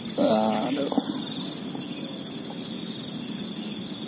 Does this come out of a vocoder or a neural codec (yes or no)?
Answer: no